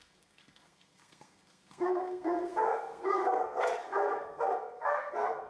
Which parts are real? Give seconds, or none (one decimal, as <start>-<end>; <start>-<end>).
none